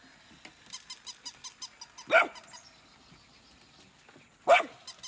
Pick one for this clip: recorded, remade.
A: recorded